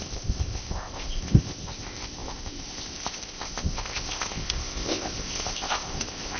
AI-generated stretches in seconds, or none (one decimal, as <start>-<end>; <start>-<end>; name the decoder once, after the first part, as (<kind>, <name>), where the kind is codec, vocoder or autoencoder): 0.0-6.4 (codec, ZipCodec)

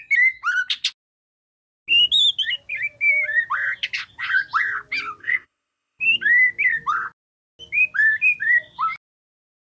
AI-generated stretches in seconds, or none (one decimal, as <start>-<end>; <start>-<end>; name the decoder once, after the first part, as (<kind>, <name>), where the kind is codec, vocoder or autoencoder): 5.2-6.0 (codec, ZipCodec)

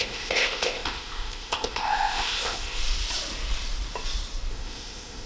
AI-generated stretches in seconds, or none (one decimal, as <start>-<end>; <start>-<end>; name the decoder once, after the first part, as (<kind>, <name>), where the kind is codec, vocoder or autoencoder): 0.0-2.8 (codec, ZipCodec); 4.5-5.3

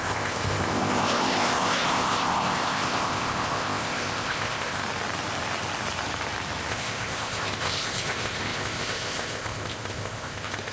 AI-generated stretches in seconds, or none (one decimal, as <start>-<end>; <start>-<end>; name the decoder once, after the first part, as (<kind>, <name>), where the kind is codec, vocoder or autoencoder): 0.0-4.8 (codec, ZipCodec); 6.7-10.7

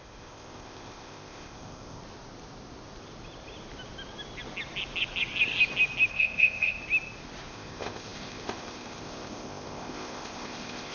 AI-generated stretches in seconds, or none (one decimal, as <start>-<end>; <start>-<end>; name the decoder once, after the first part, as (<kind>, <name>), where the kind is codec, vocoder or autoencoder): 0.0-2.0 (codec, ZipCodec); 6.1-6.8; 7.5-10.9

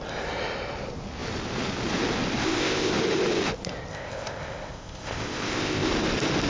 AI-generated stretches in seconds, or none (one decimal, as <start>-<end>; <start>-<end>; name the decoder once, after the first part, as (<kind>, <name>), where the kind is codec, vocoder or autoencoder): 2.4-2.9 (codec, ZipCodec); 3.9-5.9

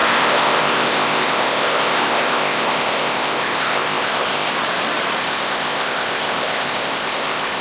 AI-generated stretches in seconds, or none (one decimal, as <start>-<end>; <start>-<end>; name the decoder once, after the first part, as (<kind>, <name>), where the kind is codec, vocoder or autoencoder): 0.0-4.5 (codec, ZipCodec); 5.2-7.6